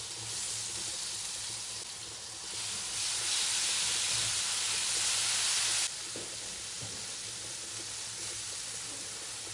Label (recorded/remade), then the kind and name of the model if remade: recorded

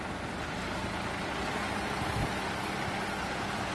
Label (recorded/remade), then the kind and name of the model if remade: recorded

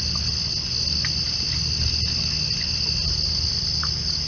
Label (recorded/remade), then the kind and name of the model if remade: recorded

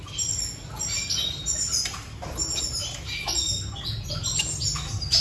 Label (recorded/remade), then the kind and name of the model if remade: recorded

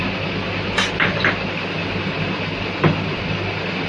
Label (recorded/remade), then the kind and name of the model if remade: recorded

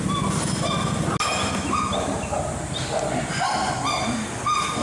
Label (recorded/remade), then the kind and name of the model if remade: recorded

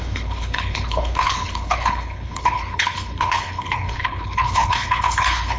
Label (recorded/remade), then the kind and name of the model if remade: remade, codec, HILCodec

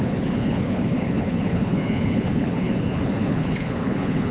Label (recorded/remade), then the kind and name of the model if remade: remade, codec, HILCodec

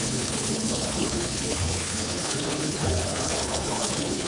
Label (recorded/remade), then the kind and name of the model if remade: remade, codec, HILCodec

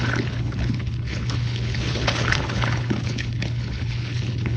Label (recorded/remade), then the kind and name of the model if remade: remade, codec, HILCodec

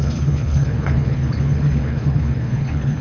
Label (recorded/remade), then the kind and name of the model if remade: remade, codec, HILCodec